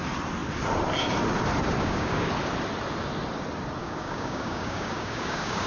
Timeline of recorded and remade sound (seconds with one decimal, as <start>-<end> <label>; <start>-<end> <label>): 0.0-1.8 recorded; 1.8-2.3 remade; 2.3-3.8 recorded; 3.8-5.7 remade